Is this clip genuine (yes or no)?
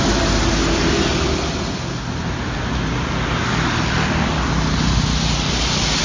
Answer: yes